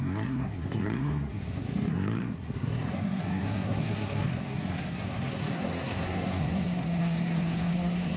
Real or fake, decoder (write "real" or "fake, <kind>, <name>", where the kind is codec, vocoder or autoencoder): fake, codec, SNAC